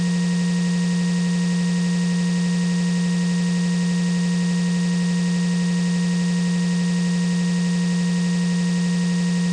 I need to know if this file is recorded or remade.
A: recorded